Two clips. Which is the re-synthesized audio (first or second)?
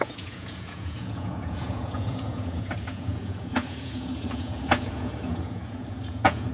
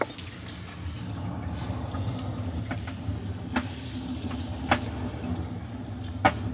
first